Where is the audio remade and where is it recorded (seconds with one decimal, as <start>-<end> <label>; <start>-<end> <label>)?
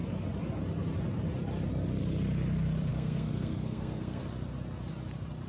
0.0-2.9 recorded; 2.9-4.2 remade; 4.2-5.5 recorded